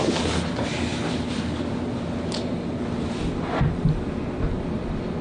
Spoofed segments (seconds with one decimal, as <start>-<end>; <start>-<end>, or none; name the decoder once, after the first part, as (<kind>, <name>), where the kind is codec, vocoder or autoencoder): none